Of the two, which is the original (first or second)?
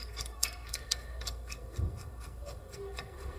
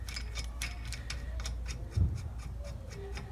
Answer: second